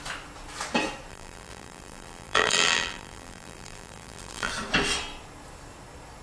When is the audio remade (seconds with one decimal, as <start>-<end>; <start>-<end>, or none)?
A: 1.1-4.5